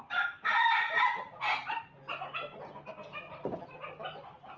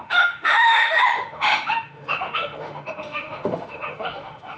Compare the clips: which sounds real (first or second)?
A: first